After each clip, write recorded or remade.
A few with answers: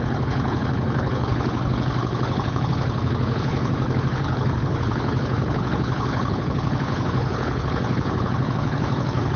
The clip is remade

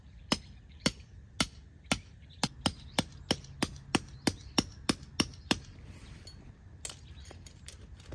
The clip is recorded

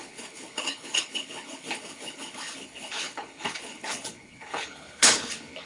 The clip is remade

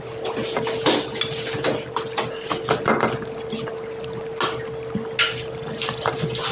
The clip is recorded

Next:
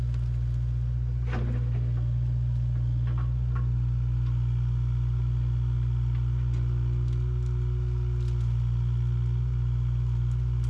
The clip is recorded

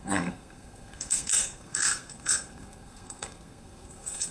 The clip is remade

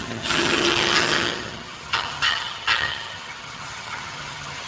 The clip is remade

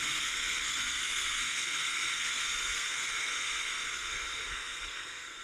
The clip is remade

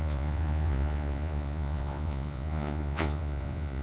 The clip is remade